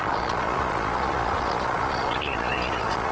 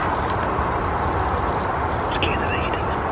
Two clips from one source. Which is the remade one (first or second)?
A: first